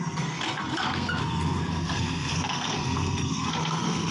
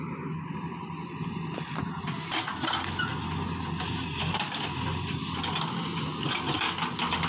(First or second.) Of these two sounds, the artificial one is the first